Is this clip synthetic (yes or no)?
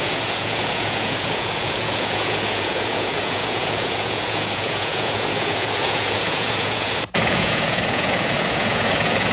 yes